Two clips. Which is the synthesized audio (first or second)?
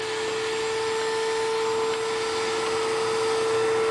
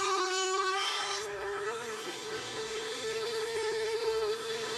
second